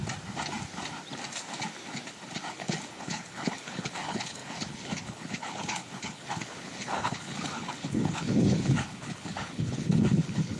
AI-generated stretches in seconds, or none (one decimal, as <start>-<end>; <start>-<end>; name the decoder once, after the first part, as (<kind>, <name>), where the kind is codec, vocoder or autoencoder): 2.5-10.6 (codec, HILCodec)